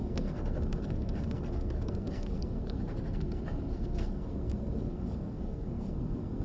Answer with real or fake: fake